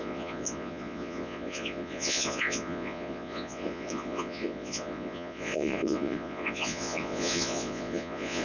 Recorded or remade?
remade